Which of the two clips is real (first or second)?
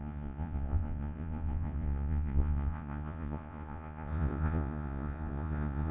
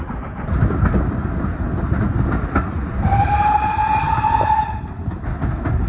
second